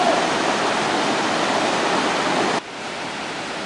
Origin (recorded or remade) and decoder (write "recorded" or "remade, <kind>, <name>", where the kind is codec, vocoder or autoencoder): recorded